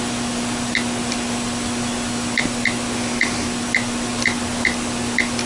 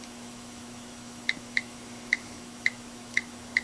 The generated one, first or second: second